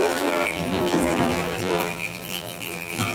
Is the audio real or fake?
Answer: fake